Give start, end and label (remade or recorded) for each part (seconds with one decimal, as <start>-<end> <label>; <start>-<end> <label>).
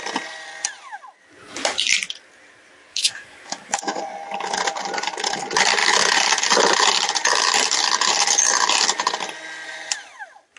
0.0-2.9 recorded; 2.9-4.0 remade; 4.0-10.6 recorded